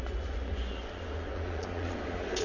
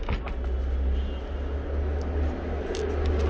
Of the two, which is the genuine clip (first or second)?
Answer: second